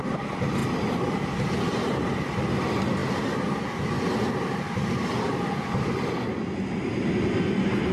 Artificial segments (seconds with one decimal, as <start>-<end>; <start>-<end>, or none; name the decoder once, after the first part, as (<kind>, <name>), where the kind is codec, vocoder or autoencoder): none